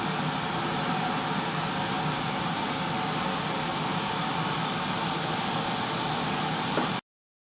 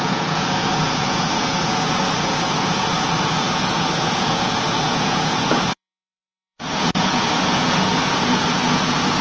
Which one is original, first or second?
first